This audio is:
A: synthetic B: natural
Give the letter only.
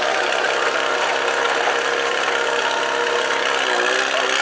B